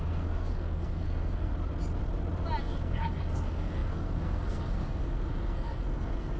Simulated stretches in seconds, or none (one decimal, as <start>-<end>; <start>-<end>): 0.0-1.5; 2.6-6.4